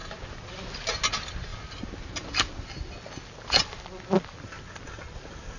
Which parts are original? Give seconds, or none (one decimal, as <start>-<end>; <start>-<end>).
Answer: 0.0-5.6